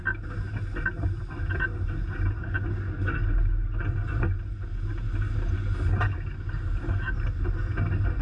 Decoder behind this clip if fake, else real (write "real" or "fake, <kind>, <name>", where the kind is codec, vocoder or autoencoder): real